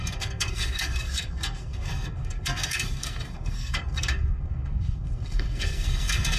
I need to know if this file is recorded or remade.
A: remade